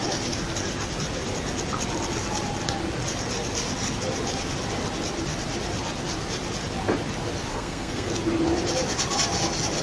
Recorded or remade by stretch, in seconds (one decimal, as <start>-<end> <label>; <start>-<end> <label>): 0.0-7.5 recorded; 7.5-8.1 remade; 8.1-9.8 recorded